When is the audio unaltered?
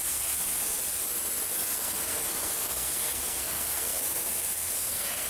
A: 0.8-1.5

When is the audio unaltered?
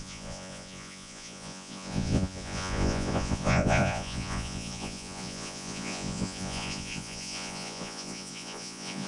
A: none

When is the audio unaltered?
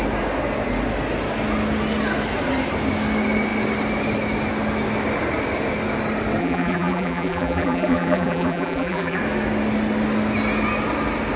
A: 0.0-6.4; 9.2-11.4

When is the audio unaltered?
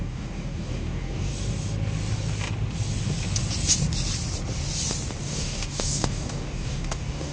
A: 1.3-5.2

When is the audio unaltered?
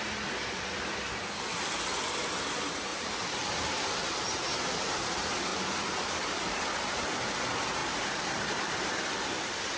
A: 0.0-2.9; 4.2-5.5; 6.6-7.8; 8.8-9.8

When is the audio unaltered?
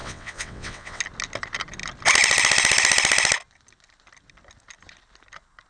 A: 1.0-5.7